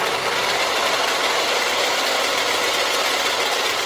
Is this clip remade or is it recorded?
recorded